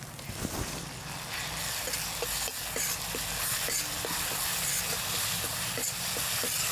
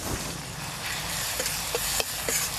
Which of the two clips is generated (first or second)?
second